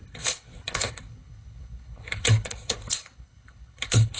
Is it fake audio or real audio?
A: fake